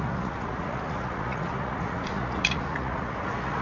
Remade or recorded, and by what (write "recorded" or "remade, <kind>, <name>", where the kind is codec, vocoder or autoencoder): remade, vocoder, Vocos